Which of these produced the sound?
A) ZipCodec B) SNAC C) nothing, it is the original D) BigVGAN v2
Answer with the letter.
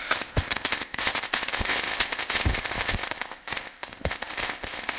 A